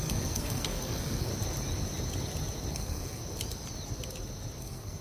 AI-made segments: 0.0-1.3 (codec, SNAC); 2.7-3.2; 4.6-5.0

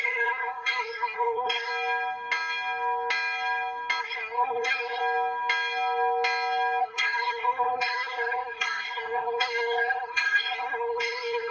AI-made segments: 0.0-1.7 (codec, SNAC); 4.0-5.0; 6.8-11.5

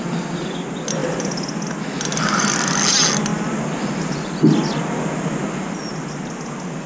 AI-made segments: none

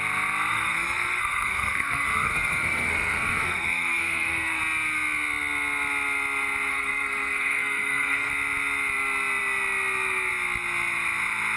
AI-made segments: 0.5-4.6 (codec, SNAC); 6.7-8.3

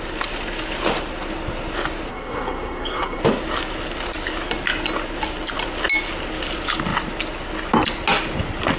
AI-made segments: 2.1-3.2 (codec, SNAC)

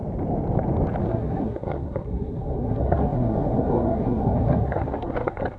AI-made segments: 1.0-5.6 (codec, SNAC)

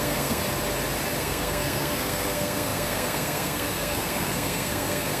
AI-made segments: 0.0-0.4 (codec, SNAC); 1.2-5.2

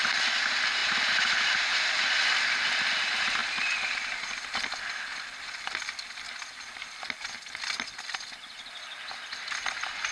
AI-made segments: none